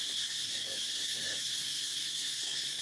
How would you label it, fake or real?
fake